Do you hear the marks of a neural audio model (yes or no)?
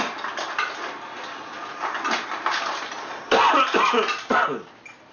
no